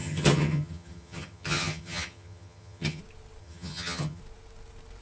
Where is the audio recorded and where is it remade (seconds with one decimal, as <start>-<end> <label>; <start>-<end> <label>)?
0.0-3.0 remade; 3.0-3.4 recorded; 3.4-4.2 remade; 4.2-5.0 recorded